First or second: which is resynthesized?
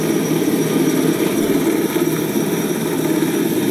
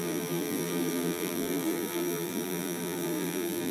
second